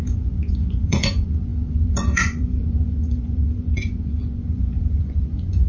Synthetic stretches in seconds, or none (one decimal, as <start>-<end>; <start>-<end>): 0.0-5.7